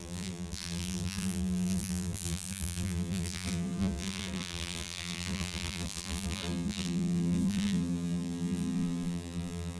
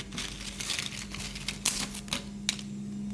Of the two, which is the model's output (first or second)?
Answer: first